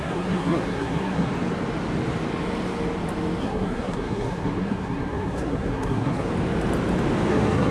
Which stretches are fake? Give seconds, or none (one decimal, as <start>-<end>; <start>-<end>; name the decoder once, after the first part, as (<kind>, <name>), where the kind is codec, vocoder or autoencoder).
0.0-1.3 (codec, SNAC); 3.4-6.3; 7.3-7.7